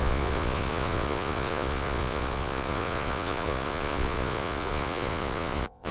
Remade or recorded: remade